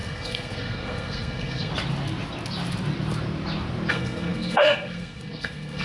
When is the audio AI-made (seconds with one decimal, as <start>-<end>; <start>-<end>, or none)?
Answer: 0.0-1.7; 3.9-5.8